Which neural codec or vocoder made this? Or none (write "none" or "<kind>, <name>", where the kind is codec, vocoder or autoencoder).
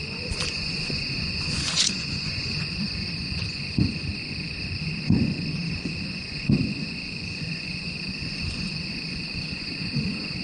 vocoder, Vocos